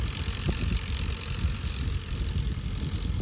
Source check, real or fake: real